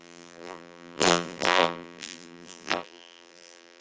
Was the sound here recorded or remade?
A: remade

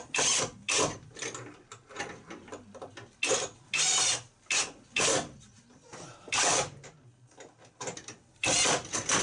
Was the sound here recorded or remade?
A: recorded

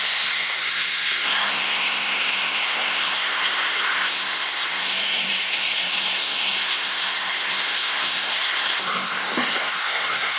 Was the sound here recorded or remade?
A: remade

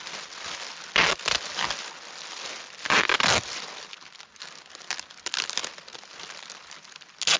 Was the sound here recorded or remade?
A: recorded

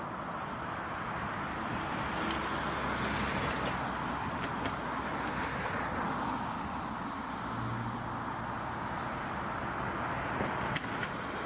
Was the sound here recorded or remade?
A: recorded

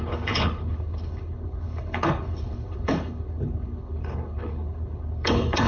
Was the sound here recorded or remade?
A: remade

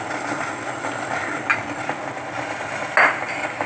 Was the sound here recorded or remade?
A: recorded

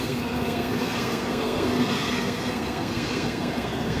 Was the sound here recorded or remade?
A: remade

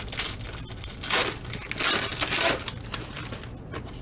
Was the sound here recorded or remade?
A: recorded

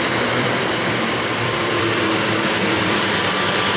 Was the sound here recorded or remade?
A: remade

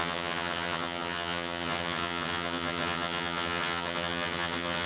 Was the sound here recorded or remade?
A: remade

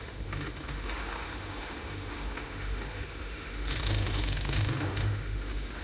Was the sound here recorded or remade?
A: remade